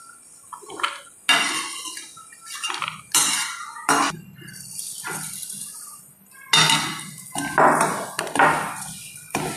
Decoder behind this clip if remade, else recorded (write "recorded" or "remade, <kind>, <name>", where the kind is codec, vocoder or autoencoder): recorded